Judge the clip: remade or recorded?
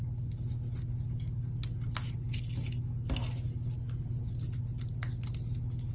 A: recorded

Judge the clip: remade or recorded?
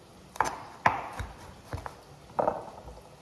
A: recorded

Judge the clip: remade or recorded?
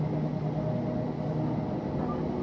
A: recorded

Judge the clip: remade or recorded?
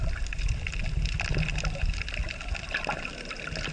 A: recorded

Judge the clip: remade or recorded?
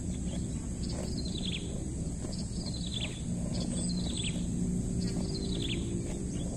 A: recorded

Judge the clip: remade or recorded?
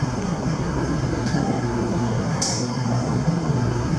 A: remade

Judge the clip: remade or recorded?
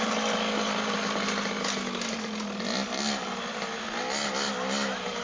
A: recorded